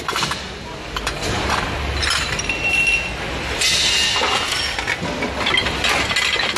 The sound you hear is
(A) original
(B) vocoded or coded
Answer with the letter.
A